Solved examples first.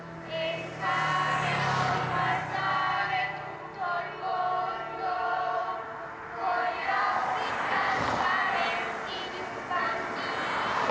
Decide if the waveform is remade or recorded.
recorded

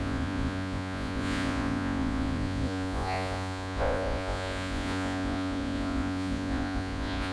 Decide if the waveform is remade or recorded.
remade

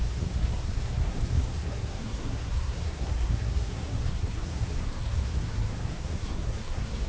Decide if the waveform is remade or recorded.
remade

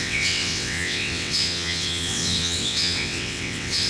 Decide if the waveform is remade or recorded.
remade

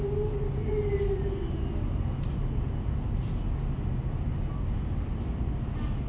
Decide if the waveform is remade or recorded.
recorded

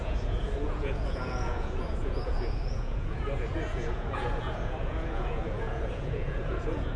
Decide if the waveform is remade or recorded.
remade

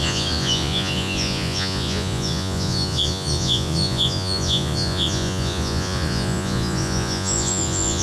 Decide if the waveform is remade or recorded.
remade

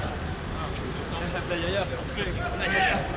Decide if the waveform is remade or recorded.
recorded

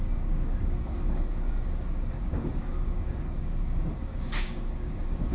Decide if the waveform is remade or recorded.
remade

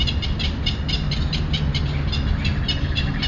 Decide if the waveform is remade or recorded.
recorded